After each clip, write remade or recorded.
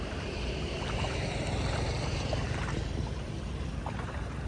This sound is remade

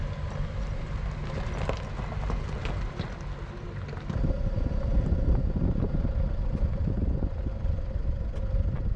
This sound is recorded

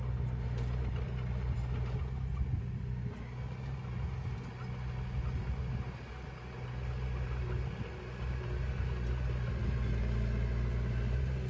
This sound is recorded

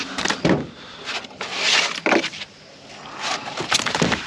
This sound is recorded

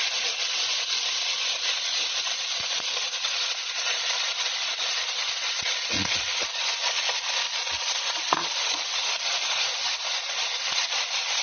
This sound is remade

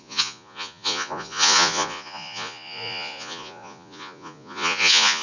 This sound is remade